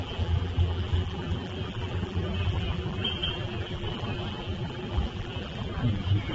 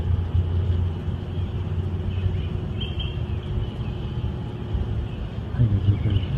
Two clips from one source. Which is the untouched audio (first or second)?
second